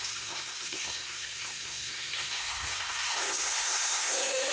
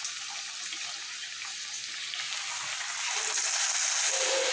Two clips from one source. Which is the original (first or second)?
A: second